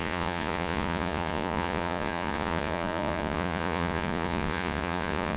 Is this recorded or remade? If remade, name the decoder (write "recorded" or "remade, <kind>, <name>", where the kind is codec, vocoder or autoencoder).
remade, vocoder, Vocos